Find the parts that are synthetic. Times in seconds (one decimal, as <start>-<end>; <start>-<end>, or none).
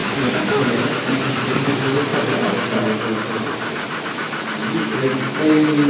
0.0-0.8; 4.6-5.2